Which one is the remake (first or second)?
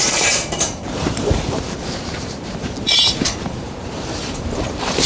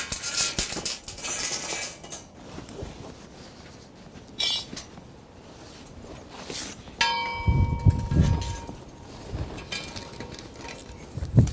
first